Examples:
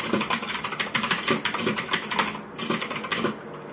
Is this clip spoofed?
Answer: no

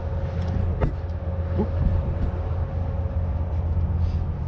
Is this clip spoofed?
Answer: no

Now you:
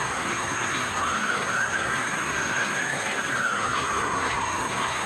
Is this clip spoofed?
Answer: yes